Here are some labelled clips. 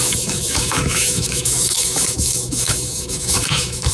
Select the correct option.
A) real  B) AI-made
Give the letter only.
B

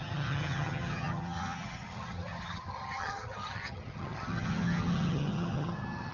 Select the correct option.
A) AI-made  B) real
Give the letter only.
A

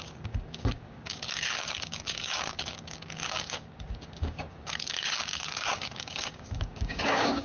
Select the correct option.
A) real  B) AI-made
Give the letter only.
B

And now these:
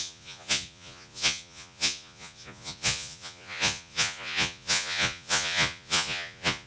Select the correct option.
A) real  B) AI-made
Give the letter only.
B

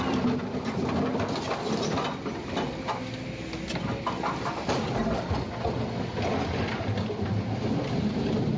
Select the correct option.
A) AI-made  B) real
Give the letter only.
B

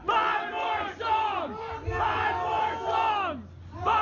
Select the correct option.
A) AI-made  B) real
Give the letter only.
B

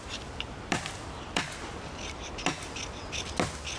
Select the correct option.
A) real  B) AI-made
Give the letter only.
A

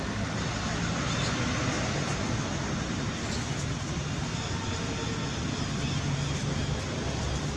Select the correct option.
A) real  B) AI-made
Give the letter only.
A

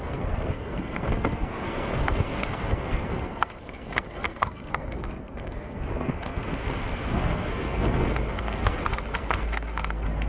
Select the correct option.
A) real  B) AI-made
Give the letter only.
B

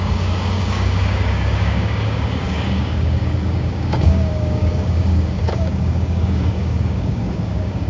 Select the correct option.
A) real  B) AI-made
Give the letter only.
B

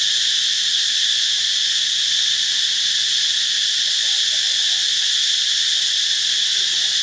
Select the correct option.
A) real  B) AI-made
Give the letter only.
A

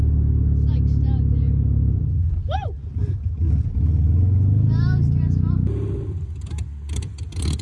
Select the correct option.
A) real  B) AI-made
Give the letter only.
A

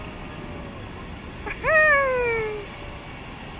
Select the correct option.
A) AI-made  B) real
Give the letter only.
B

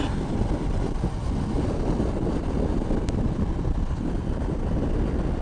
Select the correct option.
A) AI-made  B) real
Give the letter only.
B